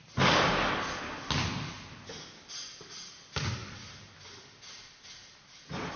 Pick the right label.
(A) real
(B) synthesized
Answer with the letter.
A